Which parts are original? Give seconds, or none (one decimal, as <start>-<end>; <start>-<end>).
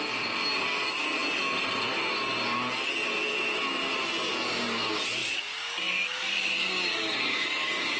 0.0-5.2